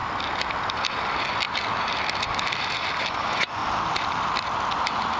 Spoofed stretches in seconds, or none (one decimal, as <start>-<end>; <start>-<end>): 3.1-3.6